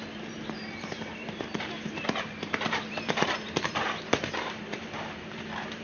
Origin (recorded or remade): remade